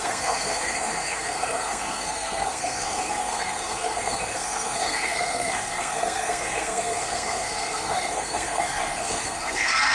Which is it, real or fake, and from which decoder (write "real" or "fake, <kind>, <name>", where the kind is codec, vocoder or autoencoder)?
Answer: fake, codec, SNAC